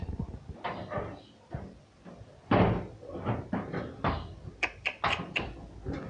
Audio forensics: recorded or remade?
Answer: recorded